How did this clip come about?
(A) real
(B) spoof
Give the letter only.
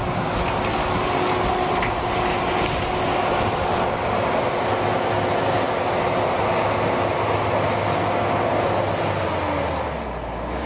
A